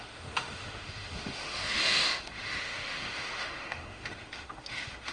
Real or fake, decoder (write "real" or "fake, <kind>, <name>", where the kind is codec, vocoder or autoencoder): fake, autoencoder, DAC-VAE